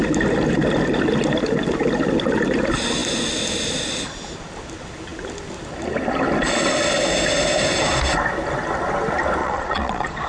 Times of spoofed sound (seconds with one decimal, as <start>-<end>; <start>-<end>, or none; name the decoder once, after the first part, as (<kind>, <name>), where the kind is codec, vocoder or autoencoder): 9.4-10.3 (vocoder, Vocos)